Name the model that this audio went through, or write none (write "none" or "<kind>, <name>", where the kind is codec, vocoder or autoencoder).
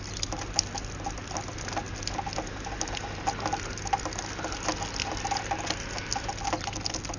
none